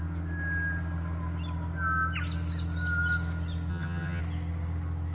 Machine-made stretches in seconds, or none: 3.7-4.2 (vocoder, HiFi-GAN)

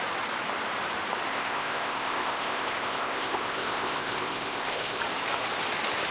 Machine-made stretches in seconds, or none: 1.3-5.0 (codec, ZipCodec)

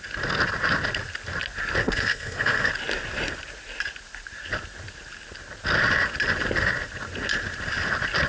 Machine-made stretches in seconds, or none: 1.8-2.7 (codec, SNAC)

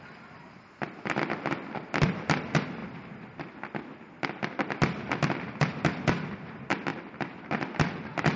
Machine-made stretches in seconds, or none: none

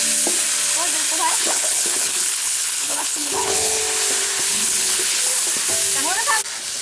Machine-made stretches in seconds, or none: 1.3-3.8 (codec, HILCodec); 4.5-5.2